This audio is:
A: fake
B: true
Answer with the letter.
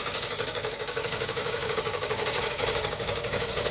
A